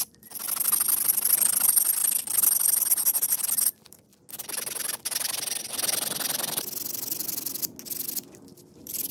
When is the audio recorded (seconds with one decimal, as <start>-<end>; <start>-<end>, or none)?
4.1-8.6